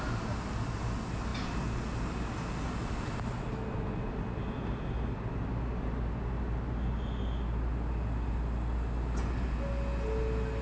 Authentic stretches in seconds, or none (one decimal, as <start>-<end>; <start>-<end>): 0.0-10.6